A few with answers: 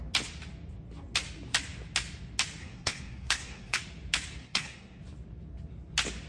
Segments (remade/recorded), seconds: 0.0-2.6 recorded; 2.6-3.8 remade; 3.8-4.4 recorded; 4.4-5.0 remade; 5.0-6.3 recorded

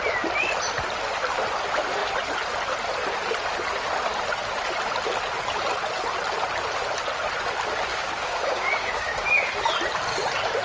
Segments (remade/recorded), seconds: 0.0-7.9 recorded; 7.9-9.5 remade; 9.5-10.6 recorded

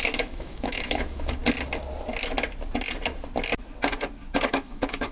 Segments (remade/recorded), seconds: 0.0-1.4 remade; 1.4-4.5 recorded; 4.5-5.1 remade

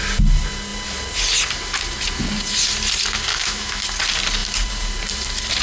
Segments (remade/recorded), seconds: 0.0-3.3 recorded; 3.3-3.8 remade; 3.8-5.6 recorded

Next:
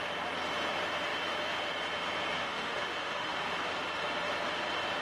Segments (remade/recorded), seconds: 0.0-2.4 recorded; 2.4-3.4 remade; 3.4-5.0 recorded

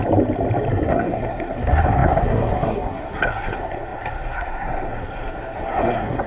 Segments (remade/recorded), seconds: 0.0-0.7 recorded; 0.7-6.3 remade